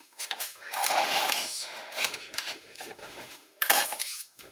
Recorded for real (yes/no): no